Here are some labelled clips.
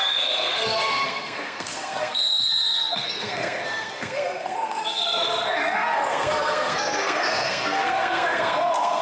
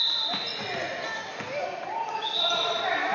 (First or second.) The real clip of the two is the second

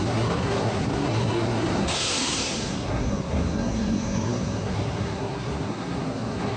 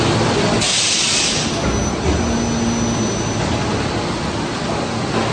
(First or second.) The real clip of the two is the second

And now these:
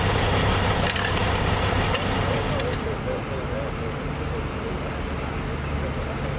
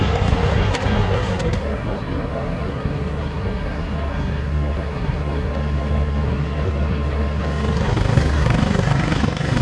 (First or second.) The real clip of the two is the first